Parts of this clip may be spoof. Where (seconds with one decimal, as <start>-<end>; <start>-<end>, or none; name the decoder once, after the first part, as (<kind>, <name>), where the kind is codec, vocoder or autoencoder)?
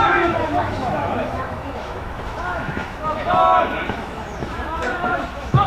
0.0-5.7 (autoencoder, DAC-VAE)